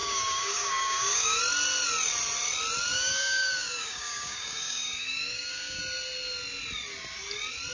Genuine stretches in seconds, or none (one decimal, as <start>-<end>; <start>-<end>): 1.4-2.9; 5.8-7.7